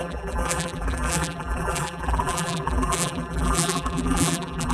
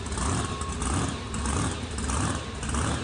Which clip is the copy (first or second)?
first